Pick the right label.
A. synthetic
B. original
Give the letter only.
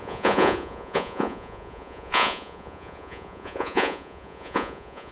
A